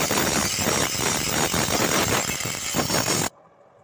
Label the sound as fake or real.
real